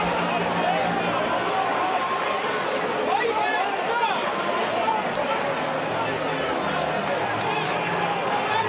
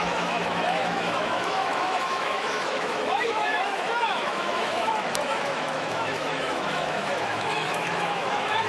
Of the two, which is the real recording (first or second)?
first